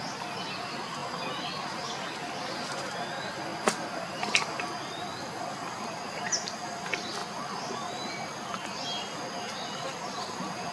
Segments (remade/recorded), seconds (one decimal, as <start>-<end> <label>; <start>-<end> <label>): 0.0-10.7 recorded